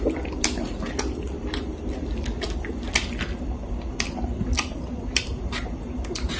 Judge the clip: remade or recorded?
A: recorded